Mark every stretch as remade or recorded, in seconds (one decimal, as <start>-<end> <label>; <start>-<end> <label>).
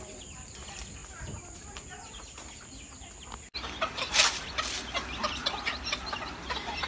0.0-1.0 remade; 1.0-4.1 recorded; 4.1-6.9 remade